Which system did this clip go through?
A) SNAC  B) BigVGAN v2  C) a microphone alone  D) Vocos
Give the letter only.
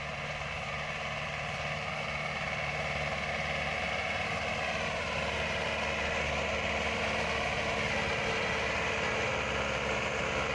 C